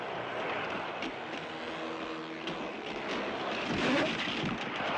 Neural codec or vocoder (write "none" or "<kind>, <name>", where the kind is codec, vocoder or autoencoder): none